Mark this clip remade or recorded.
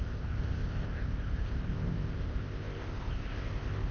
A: remade